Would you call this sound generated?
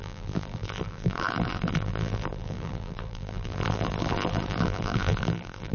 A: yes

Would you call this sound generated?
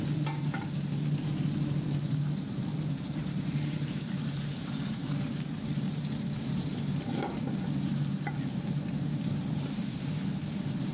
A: yes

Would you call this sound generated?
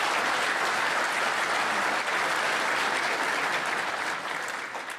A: no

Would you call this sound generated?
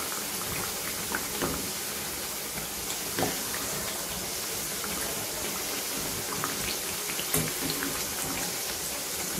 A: no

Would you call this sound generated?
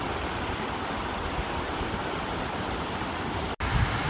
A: no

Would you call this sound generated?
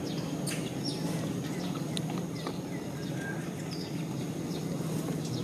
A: no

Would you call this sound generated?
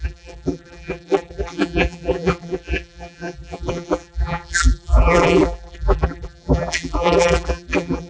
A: yes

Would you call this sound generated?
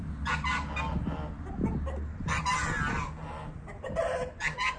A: no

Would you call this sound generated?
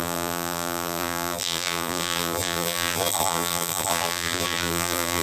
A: yes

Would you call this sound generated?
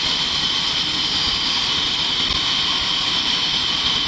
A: no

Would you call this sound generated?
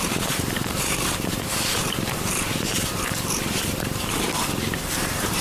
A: yes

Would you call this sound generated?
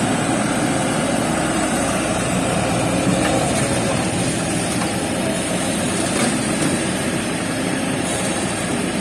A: yes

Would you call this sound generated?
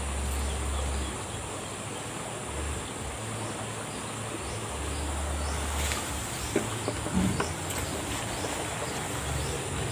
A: no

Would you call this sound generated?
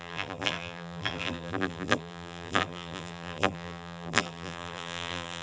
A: yes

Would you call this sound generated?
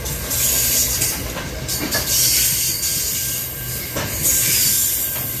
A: yes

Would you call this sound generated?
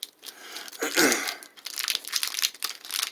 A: no